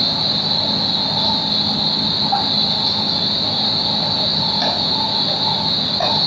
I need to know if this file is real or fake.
real